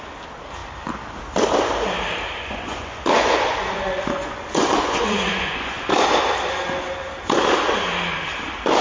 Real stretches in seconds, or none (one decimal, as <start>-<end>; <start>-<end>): 0.0-2.4; 5.9-8.8

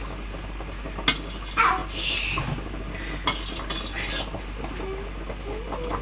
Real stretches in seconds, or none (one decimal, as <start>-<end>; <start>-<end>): 0.0-6.0